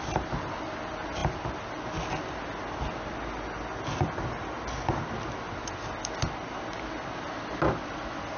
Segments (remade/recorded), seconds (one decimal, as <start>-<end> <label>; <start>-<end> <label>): 0.0-8.4 recorded

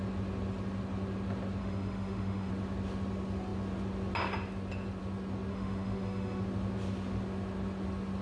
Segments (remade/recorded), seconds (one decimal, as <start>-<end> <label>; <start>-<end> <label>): 0.0-1.6 recorded; 1.6-2.5 remade; 2.5-5.5 recorded; 5.5-6.4 remade; 6.4-8.2 recorded

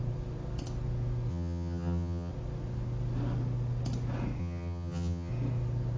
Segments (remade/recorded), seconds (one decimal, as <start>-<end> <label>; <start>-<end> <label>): 0.0-1.3 recorded; 1.3-2.3 remade; 2.3-4.4 recorded; 4.4-5.3 remade; 5.3-6.0 recorded

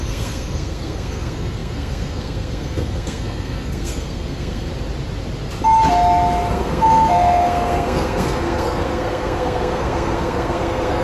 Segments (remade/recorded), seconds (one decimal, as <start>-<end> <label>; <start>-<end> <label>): 0.0-4.7 remade; 4.7-6.5 recorded; 6.5-11.0 remade

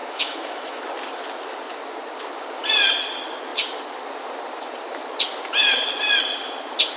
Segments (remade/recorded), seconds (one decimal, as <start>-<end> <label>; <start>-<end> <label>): 0.0-0.8 remade; 0.8-7.0 recorded

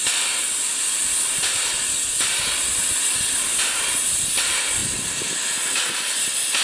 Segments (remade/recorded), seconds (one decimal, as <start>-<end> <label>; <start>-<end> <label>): 0.0-6.6 recorded

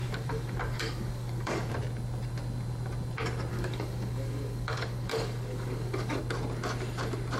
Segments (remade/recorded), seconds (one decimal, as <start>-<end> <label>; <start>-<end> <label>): 0.0-1.7 remade; 1.7-3.5 recorded; 3.5-6.2 remade; 6.2-7.4 recorded